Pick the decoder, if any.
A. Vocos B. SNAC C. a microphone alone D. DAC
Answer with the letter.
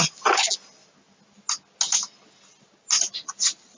C